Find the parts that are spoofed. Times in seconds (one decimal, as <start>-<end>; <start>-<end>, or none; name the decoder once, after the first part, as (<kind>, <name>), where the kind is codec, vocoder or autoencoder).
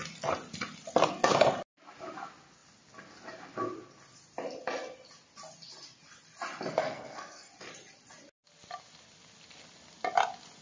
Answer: 6.7-7.5 (codec, SNAC)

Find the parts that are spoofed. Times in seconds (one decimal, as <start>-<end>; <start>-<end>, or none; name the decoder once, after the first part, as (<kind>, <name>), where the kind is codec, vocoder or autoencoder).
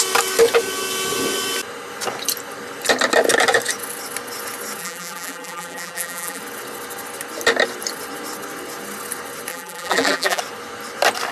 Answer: 4.8-6.4 (vocoder, BigVGAN v2); 9.5-10.4